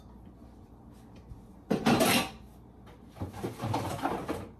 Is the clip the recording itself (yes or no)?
yes